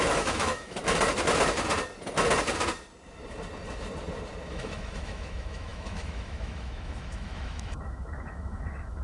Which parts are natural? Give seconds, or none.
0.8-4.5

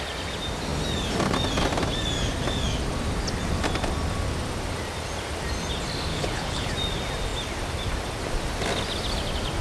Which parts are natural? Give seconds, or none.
0.0-6.1; 6.7-9.6

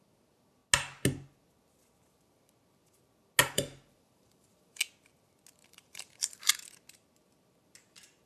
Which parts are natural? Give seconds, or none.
0.0-3.4; 4.8-5.6; 6.5-8.3

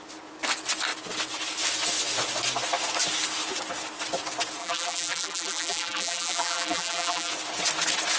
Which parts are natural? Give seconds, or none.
0.0-4.6; 7.3-8.2